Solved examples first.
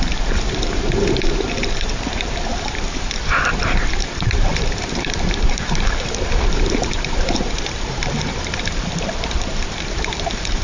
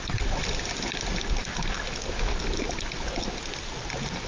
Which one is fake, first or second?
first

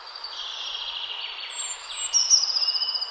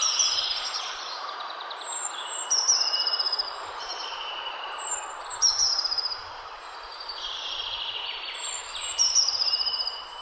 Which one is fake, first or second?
second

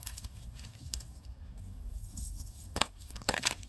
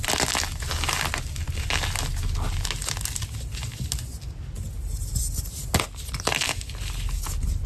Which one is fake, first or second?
first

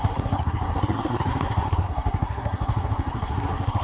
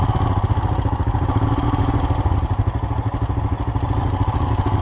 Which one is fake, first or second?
first